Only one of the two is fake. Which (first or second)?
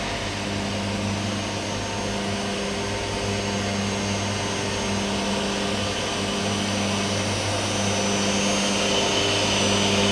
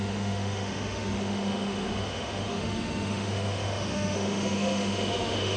second